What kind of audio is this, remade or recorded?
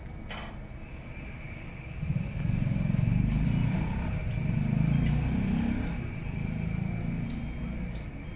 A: recorded